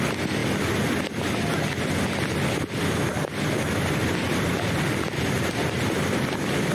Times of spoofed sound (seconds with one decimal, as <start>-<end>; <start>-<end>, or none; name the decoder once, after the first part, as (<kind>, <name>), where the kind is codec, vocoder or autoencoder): none